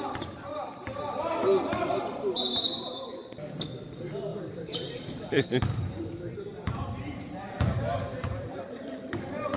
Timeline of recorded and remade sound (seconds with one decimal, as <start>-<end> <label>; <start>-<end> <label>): 0.0-4.3 recorded; 4.3-9.2 remade; 9.2-9.6 recorded